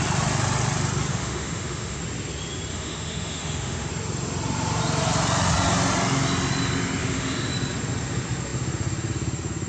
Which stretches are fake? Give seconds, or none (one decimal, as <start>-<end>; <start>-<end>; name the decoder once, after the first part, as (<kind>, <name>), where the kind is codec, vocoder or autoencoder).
1.1-2.0 (autoencoder, DAC-VAE); 2.7-3.9; 7.0-7.5

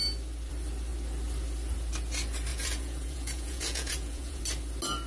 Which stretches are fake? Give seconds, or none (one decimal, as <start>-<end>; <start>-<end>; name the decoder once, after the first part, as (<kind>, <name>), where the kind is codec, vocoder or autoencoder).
2.5-4.4 (vocoder, Vocos)

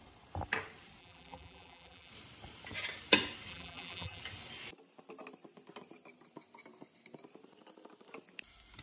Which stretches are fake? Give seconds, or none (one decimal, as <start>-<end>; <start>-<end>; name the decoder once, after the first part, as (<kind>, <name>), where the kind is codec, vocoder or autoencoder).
1.0-2.1 (vocoder, BigVGAN v2); 3.5-4.2

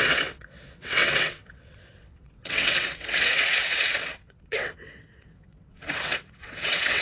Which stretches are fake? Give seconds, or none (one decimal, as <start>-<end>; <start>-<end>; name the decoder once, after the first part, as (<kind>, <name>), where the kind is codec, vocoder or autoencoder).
0.0-7.0 (vocoder, WaveNeXt)

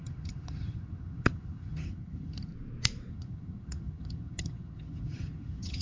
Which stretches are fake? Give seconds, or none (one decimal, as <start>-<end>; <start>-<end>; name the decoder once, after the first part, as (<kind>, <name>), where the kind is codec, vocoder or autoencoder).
0.0-2.5 (vocoder, HiFi-GAN); 3.1-5.8

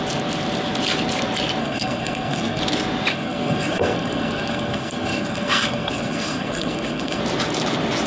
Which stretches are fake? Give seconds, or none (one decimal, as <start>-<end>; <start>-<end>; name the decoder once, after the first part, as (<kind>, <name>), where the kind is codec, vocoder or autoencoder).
1.6-2.6 (codec, SNAC); 3.1-7.2